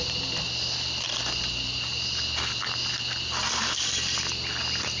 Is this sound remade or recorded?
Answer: recorded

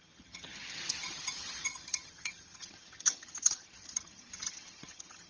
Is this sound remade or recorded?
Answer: remade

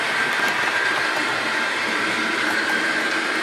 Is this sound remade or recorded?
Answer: remade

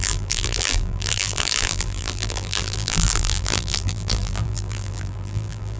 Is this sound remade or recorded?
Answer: remade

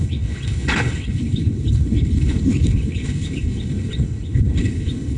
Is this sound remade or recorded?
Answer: remade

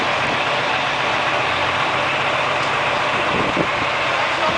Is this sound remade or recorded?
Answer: recorded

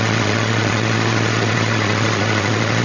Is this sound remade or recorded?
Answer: remade